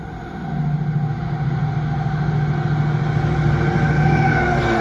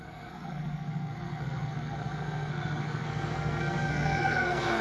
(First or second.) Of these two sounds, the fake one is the second